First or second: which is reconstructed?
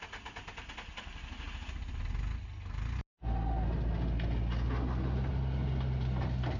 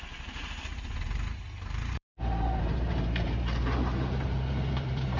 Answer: second